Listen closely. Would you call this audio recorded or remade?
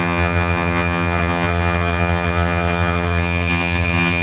remade